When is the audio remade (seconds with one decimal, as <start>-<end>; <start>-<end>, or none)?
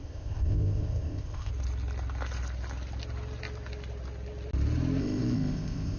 0.0-1.5; 5.0-6.0